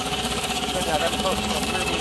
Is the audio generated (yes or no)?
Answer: yes